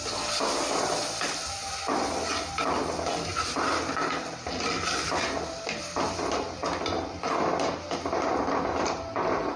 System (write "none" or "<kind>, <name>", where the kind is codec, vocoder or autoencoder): none